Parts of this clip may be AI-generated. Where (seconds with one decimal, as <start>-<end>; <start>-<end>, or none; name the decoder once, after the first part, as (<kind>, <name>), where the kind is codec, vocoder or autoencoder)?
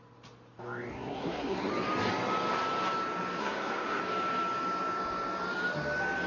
0.9-1.7 (codec, SNAC); 3.4-4.0